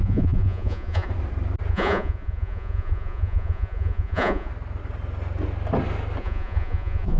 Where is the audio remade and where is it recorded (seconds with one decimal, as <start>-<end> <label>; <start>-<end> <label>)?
0.0-1.1 remade; 1.1-1.7 recorded; 1.7-4.5 remade; 4.5-6.2 recorded; 6.2-7.2 remade